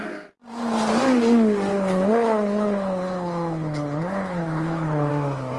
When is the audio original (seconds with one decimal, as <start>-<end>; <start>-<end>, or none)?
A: 0.0-1.7; 5.1-5.6